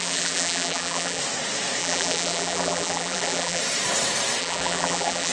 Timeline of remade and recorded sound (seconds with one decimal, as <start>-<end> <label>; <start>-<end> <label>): 0.0-1.2 remade; 1.2-1.8 recorded; 1.8-3.6 remade; 3.6-4.4 recorded; 4.4-5.3 remade